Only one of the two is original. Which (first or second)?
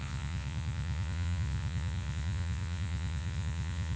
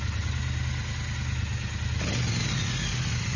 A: second